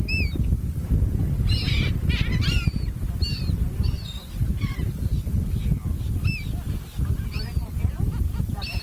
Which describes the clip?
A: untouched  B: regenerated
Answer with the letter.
A